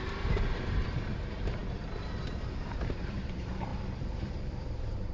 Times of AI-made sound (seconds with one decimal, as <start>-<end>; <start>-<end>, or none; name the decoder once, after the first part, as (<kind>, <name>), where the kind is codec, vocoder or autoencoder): 0.0-3.7 (vocoder, BigVGAN v2); 4.5-5.1